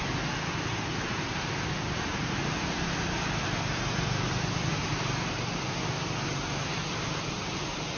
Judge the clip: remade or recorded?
remade